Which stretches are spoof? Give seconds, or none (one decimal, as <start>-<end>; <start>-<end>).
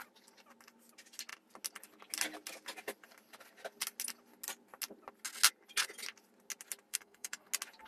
6.9-7.5